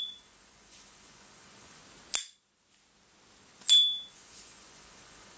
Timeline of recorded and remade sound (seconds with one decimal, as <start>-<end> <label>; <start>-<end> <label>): 0.0-1.8 remade; 1.8-4.1 recorded; 4.1-5.4 remade